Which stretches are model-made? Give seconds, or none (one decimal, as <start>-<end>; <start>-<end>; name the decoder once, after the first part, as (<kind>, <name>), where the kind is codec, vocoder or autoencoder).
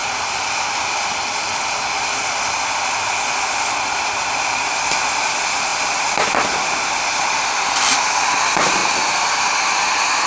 none